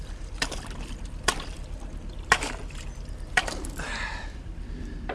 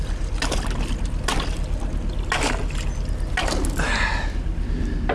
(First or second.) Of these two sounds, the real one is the second